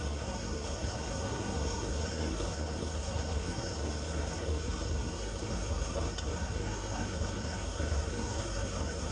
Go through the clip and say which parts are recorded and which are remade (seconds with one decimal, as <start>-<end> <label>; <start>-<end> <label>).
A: 0.0-9.1 remade